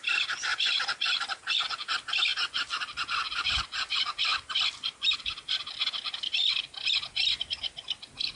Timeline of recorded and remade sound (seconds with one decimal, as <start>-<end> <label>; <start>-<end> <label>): 0.0-0.5 recorded; 0.5-1.5 remade; 1.5-4.3 recorded; 4.3-5.6 remade; 5.6-8.4 recorded